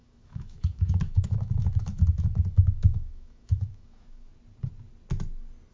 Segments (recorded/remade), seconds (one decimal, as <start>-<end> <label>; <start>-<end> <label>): 0.0-4.3 remade; 4.3-5.7 recorded